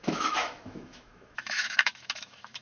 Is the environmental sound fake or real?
fake